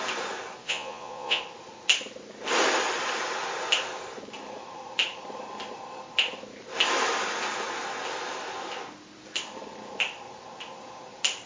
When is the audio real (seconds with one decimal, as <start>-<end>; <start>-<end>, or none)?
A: 0.0-0.6; 1.4-11.5